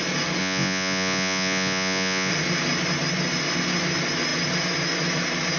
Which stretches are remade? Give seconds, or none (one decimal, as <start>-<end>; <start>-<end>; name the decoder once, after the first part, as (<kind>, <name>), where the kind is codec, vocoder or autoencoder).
0.4-2.3 (vocoder, Vocos)